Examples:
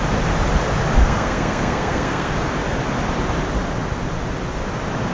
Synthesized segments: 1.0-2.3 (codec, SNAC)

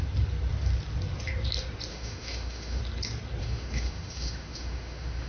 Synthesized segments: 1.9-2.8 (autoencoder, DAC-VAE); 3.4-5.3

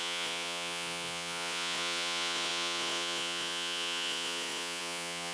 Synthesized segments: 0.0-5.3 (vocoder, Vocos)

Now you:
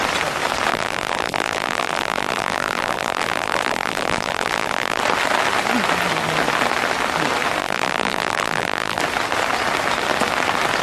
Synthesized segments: 0.7-5.0 (vocoder, BigVGAN v2); 7.6-9.0

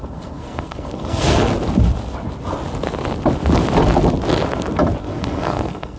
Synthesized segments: 0.0-1.5 (codec, SNAC); 5.0-6.0